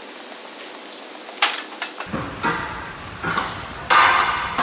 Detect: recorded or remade recorded